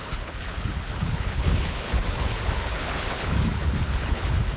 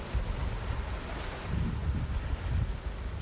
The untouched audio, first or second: second